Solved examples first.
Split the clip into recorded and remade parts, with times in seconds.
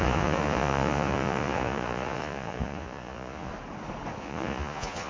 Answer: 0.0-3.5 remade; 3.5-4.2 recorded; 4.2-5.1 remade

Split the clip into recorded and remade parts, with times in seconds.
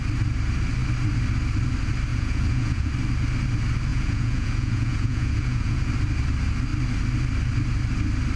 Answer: 0.0-2.1 recorded; 2.1-2.9 remade; 2.9-3.9 recorded; 3.9-5.9 remade; 5.9-8.4 recorded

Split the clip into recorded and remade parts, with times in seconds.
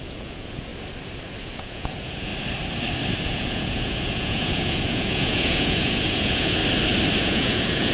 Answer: 0.0-0.7 remade; 0.7-1.4 recorded; 1.4-2.3 remade; 2.3-3.2 recorded; 3.2-6.6 remade; 6.6-7.2 recorded; 7.2-7.9 remade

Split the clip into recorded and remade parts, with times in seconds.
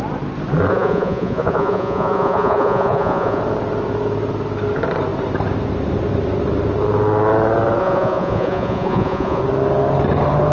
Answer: 0.0-0.7 recorded; 0.7-3.4 remade; 3.4-7.8 recorded; 7.8-9.4 remade; 9.4-10.5 recorded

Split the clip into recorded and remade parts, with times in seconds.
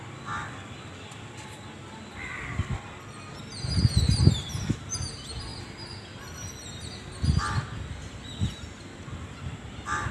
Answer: 0.0-10.1 recorded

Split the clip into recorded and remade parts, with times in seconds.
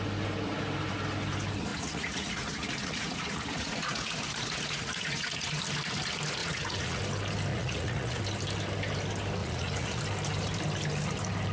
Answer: 0.0-1.7 recorded; 1.7-5.6 remade; 5.6-6.4 recorded; 6.4-7.0 remade; 7.0-7.5 recorded; 7.5-8.2 remade; 8.2-9.4 recorded; 9.4-10.0 remade; 10.0-11.5 recorded